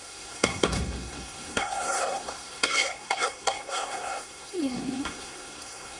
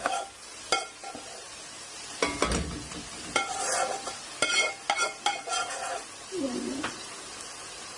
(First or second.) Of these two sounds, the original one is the second